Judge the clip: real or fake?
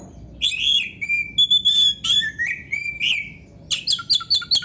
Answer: real